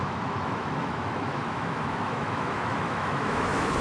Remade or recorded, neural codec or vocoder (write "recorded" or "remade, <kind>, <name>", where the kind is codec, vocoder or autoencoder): remade, autoencoder, DAC-VAE